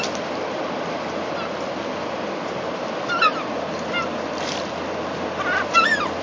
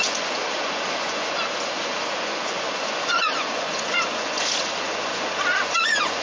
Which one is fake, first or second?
second